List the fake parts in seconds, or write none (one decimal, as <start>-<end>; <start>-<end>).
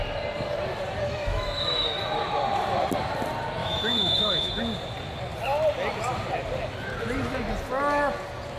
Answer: 1.2-2.0; 3.6-4.6